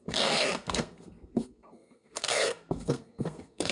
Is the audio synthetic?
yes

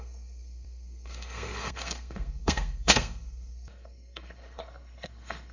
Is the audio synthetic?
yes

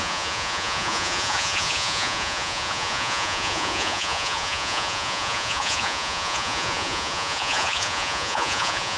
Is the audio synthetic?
yes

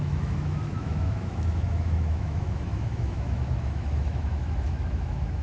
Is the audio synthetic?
yes